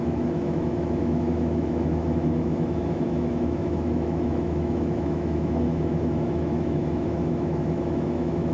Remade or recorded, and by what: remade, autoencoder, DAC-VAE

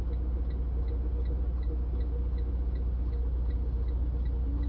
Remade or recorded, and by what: recorded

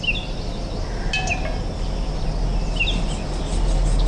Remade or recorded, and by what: recorded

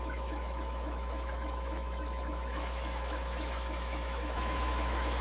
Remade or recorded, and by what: remade, autoencoder, DAC-VAE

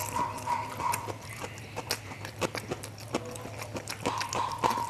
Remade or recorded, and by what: recorded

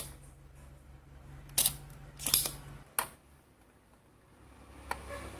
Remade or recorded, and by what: recorded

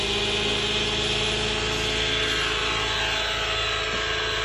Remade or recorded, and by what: recorded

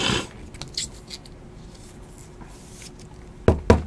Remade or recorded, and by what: recorded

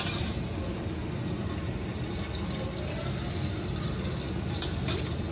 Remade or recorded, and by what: recorded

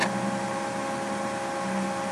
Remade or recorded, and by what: recorded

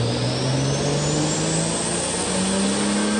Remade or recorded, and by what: recorded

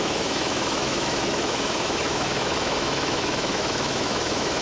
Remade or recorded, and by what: remade, autoencoder, DAC-VAE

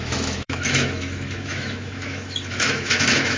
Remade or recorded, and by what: remade, autoencoder, DAC-VAE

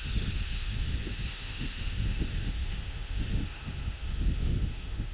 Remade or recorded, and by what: remade, autoencoder, DAC-VAE